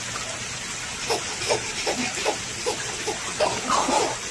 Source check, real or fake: real